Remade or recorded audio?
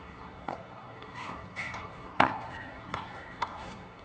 remade